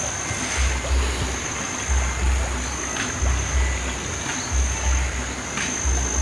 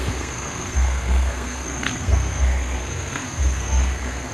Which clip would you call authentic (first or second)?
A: first